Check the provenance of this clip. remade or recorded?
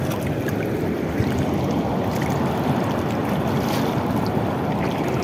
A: recorded